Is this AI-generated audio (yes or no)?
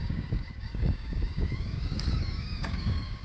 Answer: yes